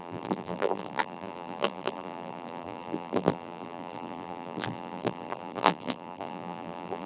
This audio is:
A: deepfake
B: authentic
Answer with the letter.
A